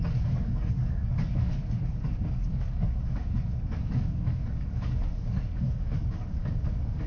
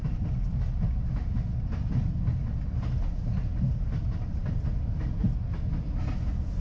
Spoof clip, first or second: first